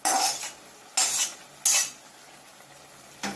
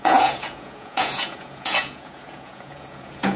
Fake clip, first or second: second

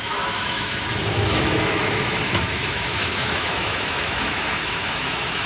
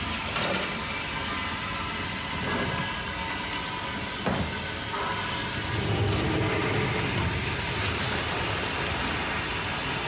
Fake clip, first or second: first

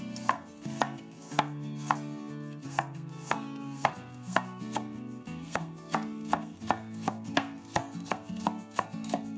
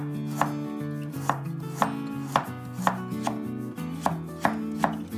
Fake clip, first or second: first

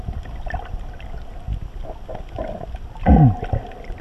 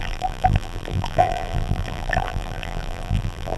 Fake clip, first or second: second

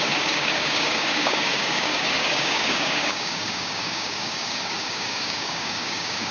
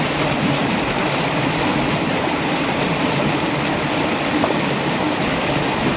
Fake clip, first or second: first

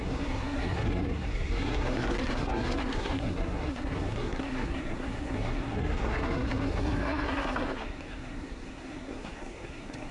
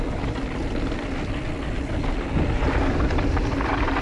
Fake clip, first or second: first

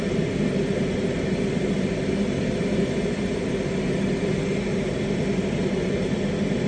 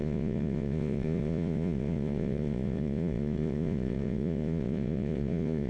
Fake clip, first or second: second